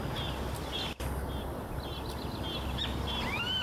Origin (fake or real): real